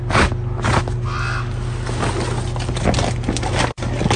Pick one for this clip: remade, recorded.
recorded